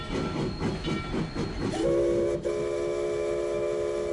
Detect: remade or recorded recorded